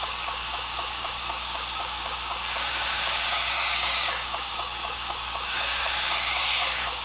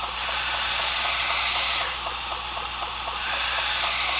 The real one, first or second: second